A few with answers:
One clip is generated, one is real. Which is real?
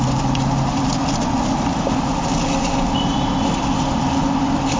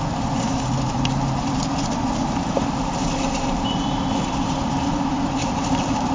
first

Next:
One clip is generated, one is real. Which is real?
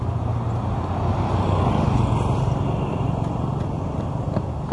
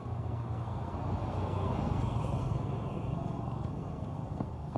first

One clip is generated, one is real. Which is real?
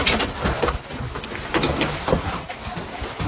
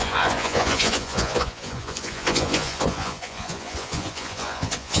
first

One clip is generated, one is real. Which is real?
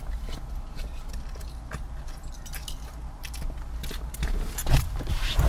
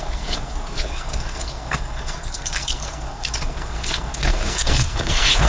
first